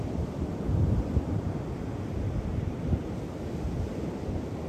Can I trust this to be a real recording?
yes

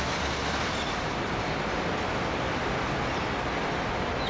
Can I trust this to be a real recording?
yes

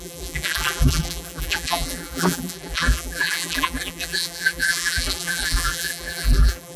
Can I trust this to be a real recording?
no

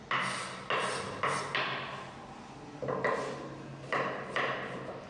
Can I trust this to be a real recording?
yes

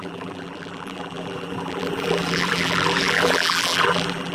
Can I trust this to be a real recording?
no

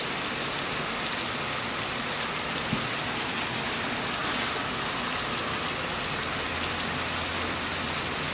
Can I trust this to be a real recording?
yes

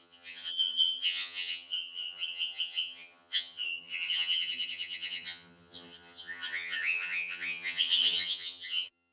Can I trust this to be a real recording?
no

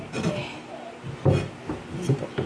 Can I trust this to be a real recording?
yes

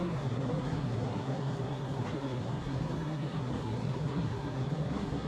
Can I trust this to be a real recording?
no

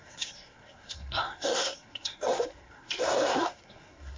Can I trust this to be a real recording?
no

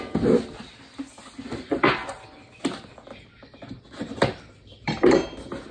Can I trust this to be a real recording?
yes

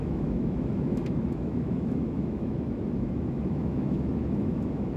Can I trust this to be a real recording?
no